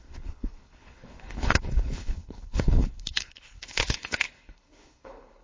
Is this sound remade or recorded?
remade